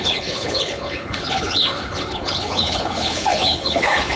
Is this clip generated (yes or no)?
yes